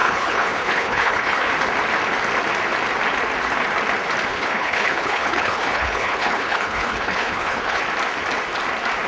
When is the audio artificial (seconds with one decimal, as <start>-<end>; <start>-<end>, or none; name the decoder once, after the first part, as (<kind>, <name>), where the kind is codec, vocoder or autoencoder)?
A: 0.0-1.5 (codec, HILCodec); 4.3-7.8